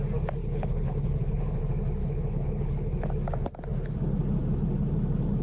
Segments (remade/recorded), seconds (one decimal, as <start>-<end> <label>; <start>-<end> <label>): 0.0-0.4 recorded; 0.4-1.6 remade; 1.6-2.0 recorded; 2.0-3.1 remade; 3.1-5.4 recorded